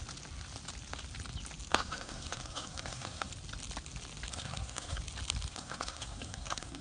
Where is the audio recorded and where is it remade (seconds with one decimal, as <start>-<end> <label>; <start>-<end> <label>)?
0.0-1.7 recorded; 1.7-3.3 remade; 3.3-4.3 recorded; 4.3-5.0 remade; 5.0-5.5 recorded; 5.5-6.8 remade